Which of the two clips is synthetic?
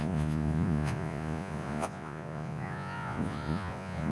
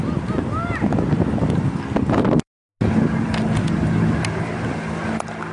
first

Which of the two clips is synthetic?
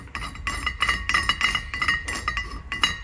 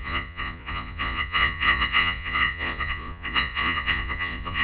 second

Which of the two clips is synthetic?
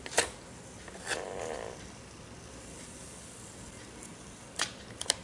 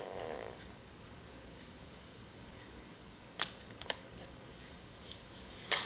second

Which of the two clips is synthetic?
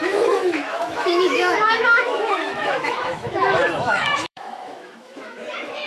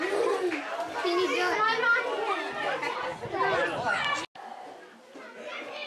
first